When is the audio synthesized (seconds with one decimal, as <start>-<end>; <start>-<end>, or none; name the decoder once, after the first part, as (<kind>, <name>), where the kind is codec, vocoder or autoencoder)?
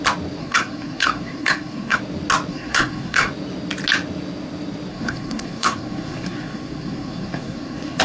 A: 0.4-2.0 (codec, SNAC); 2.5-3.3; 4.9-8.0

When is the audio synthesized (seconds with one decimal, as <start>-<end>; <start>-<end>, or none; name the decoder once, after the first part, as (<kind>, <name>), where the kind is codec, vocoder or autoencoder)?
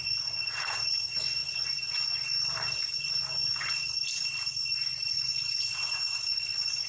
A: none